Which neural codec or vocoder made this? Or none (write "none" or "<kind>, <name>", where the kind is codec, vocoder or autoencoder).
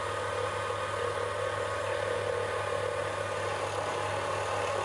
none